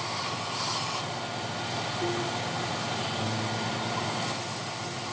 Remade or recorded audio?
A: recorded